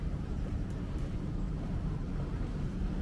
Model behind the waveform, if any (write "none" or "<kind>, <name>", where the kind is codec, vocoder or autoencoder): vocoder, BigVGAN v2